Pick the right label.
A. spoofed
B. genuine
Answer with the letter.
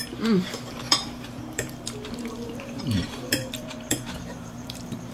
A